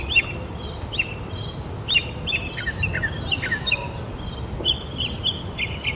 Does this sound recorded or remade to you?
recorded